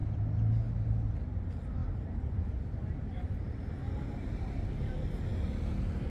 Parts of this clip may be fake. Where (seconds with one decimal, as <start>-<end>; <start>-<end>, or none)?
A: none